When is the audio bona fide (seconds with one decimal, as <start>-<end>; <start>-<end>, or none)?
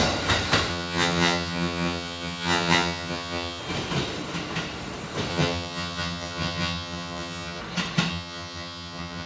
0.0-0.7; 3.6-5.3; 7.6-8.1